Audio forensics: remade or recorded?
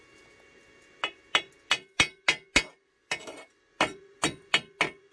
recorded